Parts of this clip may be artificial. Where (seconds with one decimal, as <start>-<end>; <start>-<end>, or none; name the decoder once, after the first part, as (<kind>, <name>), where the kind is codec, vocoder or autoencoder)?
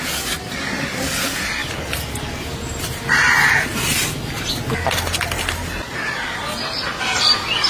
none